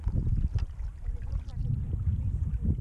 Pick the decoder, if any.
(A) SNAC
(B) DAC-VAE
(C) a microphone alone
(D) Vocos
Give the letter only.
C